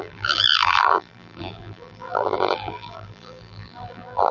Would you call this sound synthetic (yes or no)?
yes